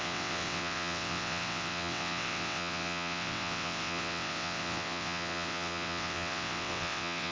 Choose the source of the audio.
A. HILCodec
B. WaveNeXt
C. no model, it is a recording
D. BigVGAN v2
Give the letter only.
B